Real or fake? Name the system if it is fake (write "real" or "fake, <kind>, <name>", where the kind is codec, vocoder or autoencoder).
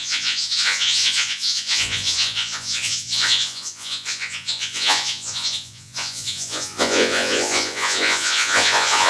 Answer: fake, vocoder, Vocos